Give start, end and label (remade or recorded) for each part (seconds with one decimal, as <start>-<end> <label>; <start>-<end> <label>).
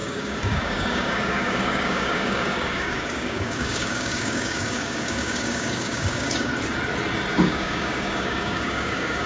0.0-6.5 remade; 6.5-7.3 recorded; 7.3-9.3 remade